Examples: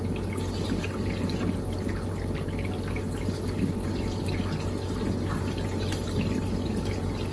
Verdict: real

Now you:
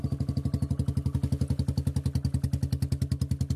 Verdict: real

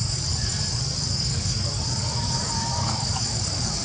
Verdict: fake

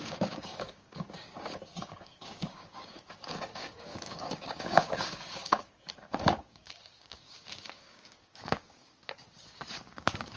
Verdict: fake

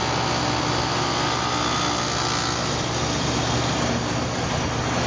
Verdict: real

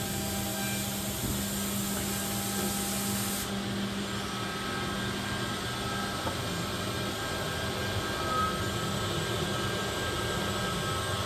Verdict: real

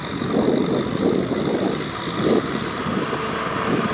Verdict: real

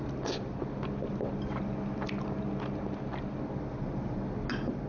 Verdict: real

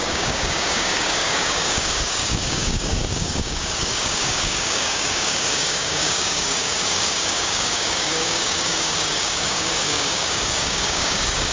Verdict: fake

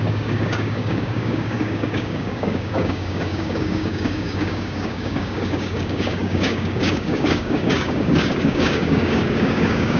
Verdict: fake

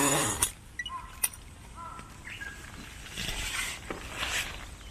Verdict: real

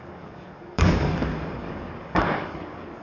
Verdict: fake